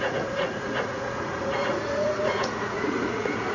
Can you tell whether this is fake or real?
fake